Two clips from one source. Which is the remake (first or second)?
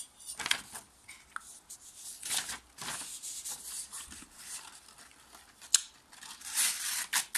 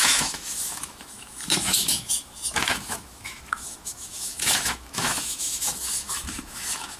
second